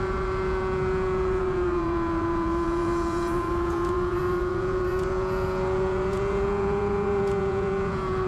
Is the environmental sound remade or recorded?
remade